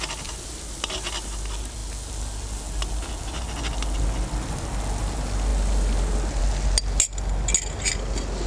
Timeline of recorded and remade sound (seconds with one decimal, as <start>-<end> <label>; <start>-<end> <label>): 0.0-8.5 recorded